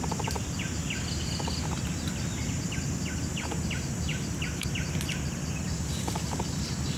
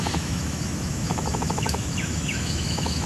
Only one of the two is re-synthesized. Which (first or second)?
second